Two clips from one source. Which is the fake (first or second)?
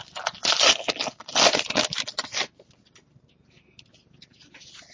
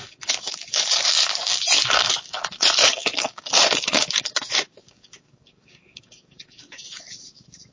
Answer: second